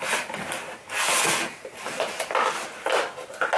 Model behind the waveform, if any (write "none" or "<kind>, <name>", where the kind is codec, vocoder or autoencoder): none